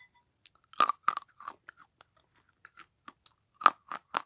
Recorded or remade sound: recorded